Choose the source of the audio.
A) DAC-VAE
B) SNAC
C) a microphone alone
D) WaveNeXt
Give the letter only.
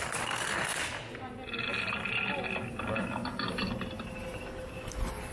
C